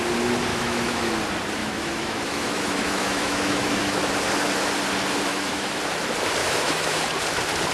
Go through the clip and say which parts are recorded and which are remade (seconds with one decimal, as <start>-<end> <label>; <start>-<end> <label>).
0.0-0.5 recorded; 0.5-1.1 remade; 1.1-1.6 recorded; 1.6-4.1 remade; 4.1-5.3 recorded; 5.3-5.8 remade; 5.8-6.4 recorded; 6.4-7.0 remade; 7.0-7.7 recorded